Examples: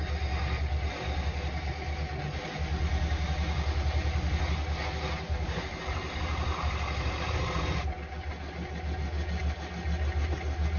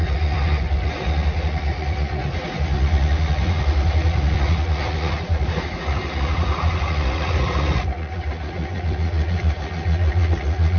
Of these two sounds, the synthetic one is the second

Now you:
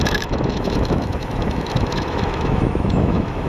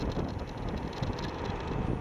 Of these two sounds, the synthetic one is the first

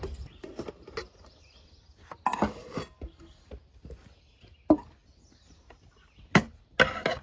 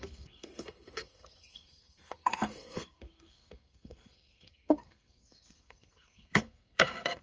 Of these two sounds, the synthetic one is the second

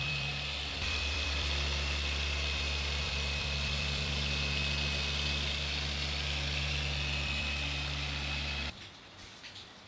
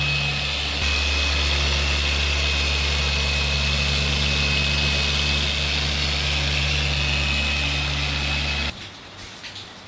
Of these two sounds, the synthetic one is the first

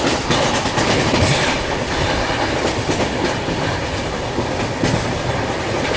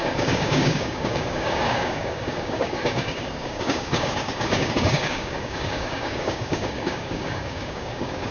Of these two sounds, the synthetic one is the second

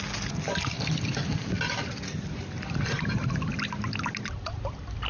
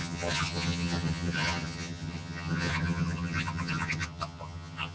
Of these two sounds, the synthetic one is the second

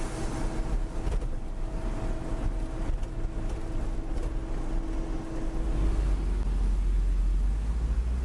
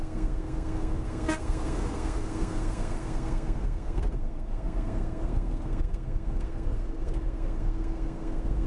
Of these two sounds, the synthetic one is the second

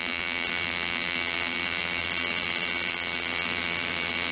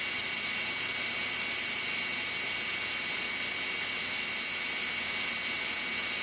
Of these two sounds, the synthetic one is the first